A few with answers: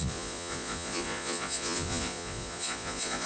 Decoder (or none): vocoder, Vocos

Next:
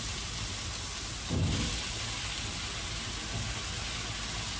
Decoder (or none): none